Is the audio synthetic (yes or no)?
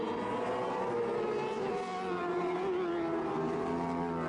no